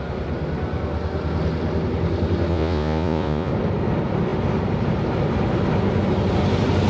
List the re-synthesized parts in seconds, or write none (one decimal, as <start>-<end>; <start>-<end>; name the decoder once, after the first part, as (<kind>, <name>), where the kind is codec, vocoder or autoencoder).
2.5-3.5 (vocoder, Vocos)